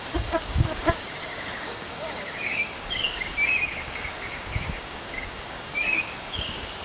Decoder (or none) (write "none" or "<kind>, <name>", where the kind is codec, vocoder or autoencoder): codec, DAC